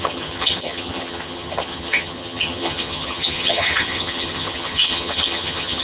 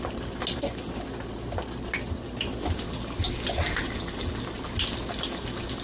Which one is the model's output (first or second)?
first